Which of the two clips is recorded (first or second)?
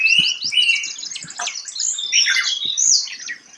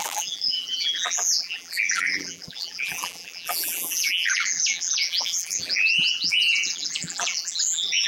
first